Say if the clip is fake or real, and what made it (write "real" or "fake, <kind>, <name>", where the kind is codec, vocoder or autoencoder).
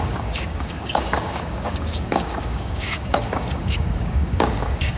fake, codec, DAC